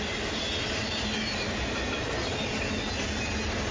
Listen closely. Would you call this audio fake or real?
real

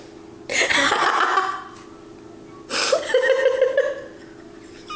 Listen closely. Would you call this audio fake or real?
real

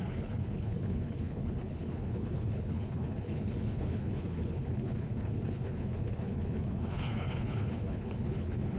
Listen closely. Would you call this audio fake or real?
fake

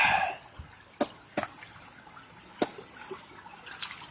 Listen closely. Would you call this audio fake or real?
real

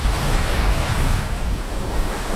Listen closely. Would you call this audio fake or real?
fake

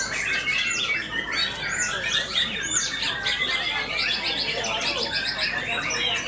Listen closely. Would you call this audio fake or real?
real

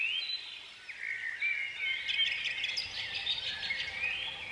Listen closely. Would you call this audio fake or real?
real